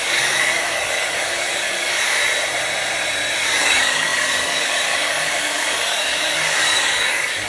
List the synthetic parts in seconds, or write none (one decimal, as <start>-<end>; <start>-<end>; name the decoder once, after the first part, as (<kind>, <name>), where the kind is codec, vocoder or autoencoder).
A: 0.0-2.2 (codec, DAC); 3.6-7.5